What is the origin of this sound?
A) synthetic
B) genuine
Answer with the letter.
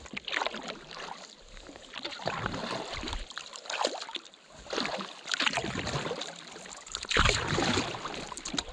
A